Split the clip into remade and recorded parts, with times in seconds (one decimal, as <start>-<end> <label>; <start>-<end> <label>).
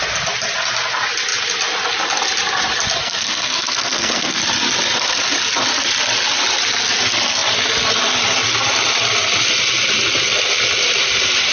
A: 0.0-3.0 recorded; 3.0-4.4 remade; 4.4-11.5 recorded